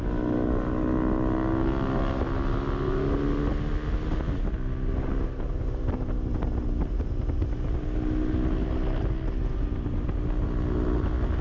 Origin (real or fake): real